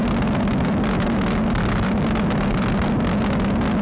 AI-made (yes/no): no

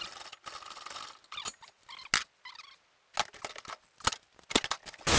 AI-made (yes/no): no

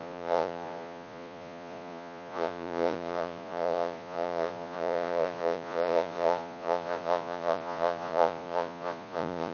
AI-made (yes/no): yes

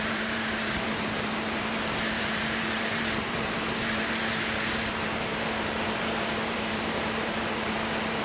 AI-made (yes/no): yes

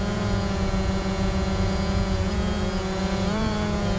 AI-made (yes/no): yes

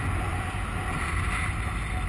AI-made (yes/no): no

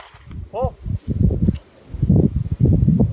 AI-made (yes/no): no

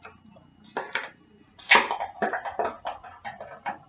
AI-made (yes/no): no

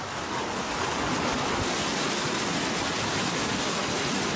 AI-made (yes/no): no